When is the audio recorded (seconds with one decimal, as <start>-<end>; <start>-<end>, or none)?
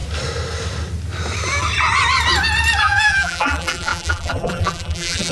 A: 0.0-2.8